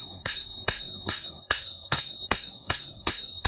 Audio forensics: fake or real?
fake